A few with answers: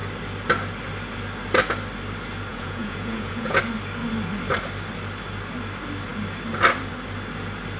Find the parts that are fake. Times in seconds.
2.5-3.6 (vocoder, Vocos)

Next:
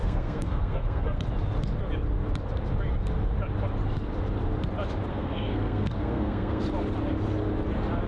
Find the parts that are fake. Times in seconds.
0.0-1.2 (codec, SNAC); 5.1-6.6

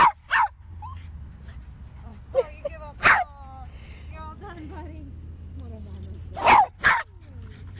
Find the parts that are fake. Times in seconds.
none

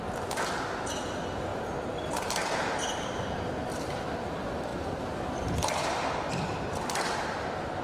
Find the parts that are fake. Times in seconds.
none